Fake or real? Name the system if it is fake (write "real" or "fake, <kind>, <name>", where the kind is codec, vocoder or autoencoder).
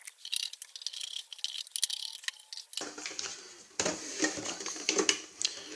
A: real